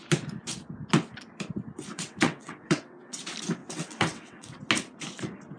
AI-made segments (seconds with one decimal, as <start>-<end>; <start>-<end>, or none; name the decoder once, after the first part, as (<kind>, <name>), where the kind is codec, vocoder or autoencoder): 1.9-3.2 (vocoder, WaveNeXt); 3.6-4.6